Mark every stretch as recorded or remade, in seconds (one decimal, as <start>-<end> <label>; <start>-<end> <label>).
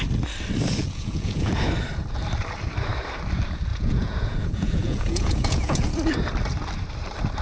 0.0-0.8 recorded; 0.8-1.7 remade; 1.7-3.7 recorded; 3.7-5.9 remade; 5.9-7.4 recorded